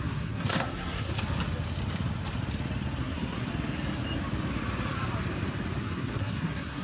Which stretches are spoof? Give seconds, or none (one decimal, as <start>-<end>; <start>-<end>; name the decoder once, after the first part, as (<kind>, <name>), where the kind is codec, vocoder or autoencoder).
0.0-1.1 (codec, SNAC); 3.0-3.5; 5.8-6.8